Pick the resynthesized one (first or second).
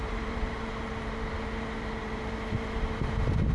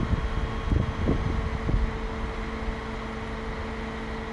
first